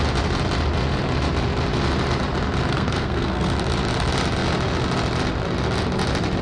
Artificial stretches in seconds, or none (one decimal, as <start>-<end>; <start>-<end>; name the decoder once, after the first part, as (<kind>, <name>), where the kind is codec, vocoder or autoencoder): 2.7-3.5 (codec, SNAC)